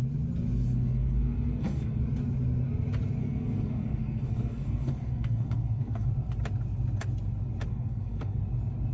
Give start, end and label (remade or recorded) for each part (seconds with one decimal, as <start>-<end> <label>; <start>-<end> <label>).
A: 0.0-0.7 recorded; 0.7-2.0 remade; 2.0-3.2 recorded; 3.2-6.1 remade; 6.1-7.7 recorded; 7.7-8.4 remade; 8.4-8.9 recorded